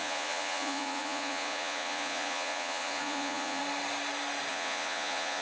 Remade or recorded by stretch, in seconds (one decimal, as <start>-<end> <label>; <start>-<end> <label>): 0.0-3.6 remade; 3.6-4.5 recorded; 4.5-5.4 remade